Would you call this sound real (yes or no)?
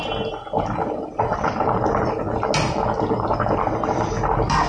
yes